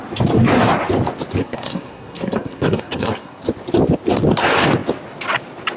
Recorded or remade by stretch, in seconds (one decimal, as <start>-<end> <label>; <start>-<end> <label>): 0.0-1.4 recorded; 1.4-3.4 remade; 3.4-5.8 recorded